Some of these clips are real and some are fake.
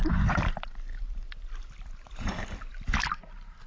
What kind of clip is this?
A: real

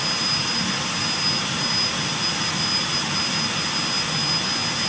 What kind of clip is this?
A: real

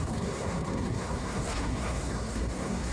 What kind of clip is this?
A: fake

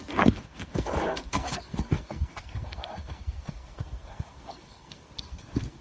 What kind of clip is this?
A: fake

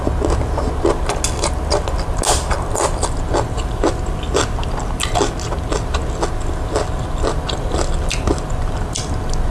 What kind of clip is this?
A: real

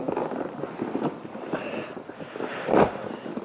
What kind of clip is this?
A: real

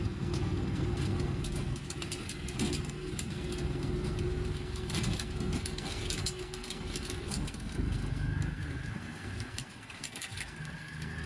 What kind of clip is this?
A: fake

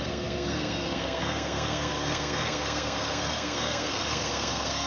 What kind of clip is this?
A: fake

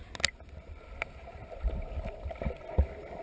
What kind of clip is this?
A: real